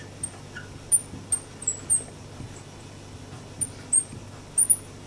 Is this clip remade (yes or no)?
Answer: no